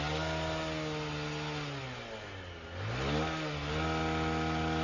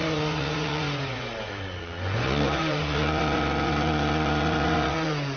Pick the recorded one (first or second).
first